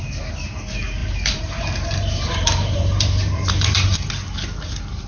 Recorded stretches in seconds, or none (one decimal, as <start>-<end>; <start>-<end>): 0.0-1.0; 4.1-5.1